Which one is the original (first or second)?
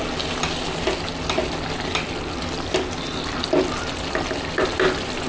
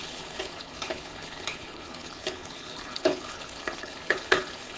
first